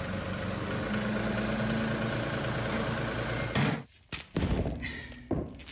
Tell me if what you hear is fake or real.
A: real